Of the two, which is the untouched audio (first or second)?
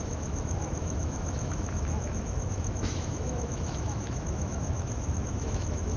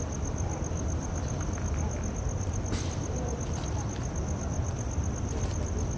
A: second